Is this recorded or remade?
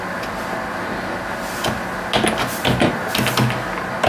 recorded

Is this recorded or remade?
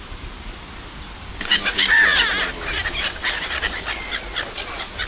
recorded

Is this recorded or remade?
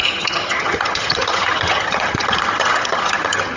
remade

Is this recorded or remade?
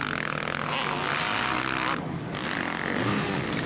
recorded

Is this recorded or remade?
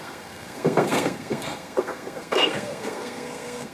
remade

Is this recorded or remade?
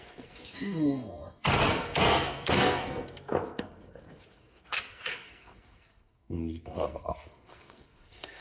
remade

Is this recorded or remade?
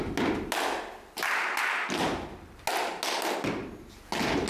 recorded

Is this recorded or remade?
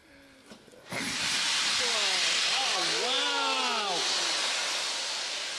recorded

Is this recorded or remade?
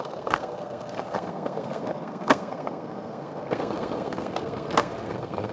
remade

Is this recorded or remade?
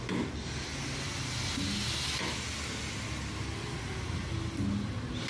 recorded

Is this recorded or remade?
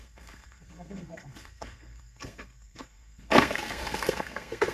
remade